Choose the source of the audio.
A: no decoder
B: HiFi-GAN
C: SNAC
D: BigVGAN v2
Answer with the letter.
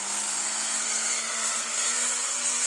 C